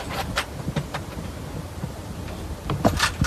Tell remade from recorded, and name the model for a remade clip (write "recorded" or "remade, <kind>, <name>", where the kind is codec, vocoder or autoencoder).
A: recorded